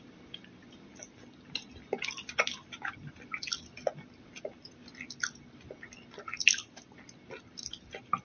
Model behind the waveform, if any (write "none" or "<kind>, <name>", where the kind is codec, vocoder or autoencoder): none